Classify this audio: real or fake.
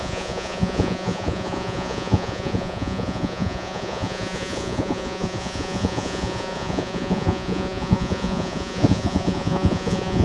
fake